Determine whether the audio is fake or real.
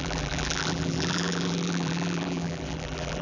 fake